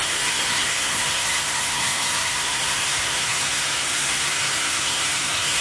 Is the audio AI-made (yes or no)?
yes